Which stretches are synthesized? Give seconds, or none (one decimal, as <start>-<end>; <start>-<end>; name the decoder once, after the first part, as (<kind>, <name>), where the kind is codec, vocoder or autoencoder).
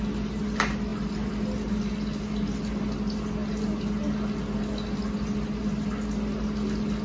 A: none